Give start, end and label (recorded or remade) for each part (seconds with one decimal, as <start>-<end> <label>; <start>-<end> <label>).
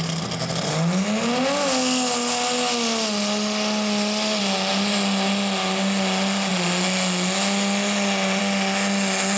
0.0-9.4 recorded